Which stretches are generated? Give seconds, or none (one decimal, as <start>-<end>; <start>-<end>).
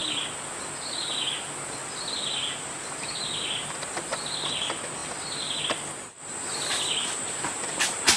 1.8-3.0; 5.0-5.6